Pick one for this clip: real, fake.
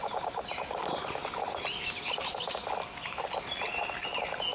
real